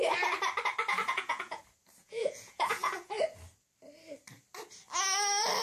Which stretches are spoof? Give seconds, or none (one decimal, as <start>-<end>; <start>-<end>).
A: 0.9-1.6; 2.0-3.1